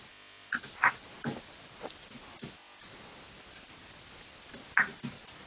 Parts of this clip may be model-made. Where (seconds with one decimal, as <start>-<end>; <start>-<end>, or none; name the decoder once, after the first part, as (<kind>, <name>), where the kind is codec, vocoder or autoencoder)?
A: none